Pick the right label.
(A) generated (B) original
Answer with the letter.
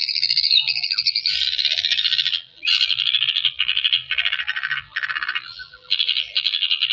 A